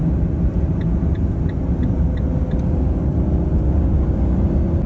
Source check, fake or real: real